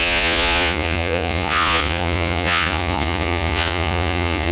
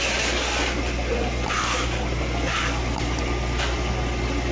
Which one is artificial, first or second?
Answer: first